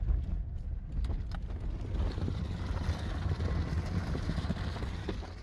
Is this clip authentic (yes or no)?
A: yes